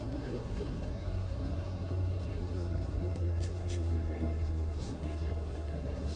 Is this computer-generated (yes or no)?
yes